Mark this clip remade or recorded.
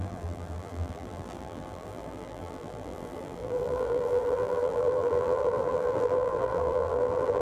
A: remade